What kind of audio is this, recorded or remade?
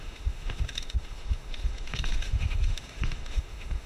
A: remade